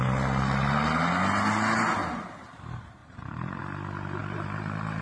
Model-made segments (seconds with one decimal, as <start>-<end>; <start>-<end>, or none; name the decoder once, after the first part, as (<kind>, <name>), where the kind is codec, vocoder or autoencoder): 2.0-2.6 (vocoder, BigVGAN v2); 3.0-3.6; 4.2-5.0